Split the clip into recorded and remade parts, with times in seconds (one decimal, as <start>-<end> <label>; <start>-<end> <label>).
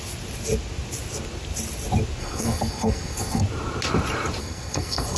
0.0-2.2 recorded; 2.2-3.4 remade; 3.4-4.4 recorded; 4.4-5.2 remade